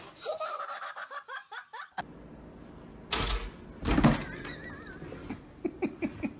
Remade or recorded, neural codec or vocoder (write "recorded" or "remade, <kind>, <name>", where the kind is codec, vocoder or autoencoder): recorded